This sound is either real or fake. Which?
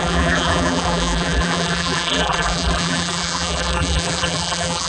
fake